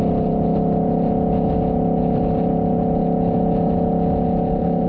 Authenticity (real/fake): real